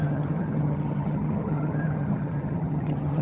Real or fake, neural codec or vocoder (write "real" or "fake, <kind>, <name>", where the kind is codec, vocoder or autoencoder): fake, vocoder, HiFi-GAN